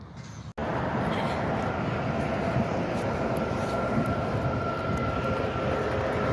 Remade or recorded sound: recorded